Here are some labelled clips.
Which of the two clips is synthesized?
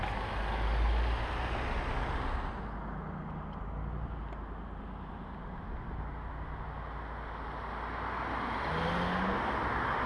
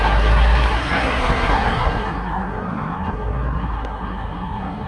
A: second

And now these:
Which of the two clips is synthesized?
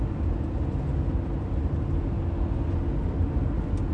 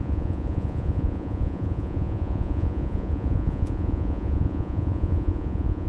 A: second